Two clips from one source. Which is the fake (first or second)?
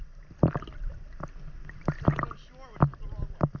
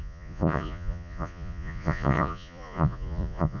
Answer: second